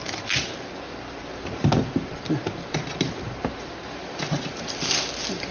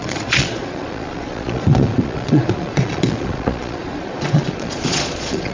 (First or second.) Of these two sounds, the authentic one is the first